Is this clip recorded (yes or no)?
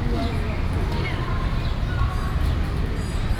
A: yes